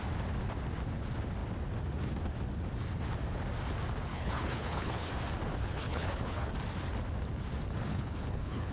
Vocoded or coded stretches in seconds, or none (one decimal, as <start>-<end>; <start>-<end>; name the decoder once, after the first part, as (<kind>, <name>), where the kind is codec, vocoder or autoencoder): 4.1-5.1 (codec, HILCodec); 5.6-6.5; 7.9-8.7